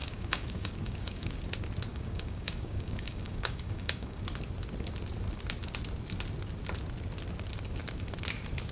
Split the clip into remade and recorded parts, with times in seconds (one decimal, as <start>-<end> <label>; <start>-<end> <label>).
0.0-1.3 remade; 1.3-1.9 recorded; 1.9-4.2 remade; 4.2-8.7 recorded